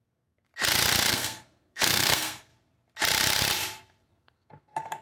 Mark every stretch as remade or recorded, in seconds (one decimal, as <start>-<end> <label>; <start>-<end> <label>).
0.0-0.5 remade; 0.5-1.1 recorded; 1.1-2.5 remade; 2.5-4.1 recorded; 4.1-5.0 remade